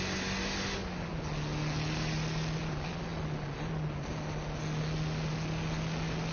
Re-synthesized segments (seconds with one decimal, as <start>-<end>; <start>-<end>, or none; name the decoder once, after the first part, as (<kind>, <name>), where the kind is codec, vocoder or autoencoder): none